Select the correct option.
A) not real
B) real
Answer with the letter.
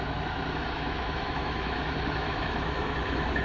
A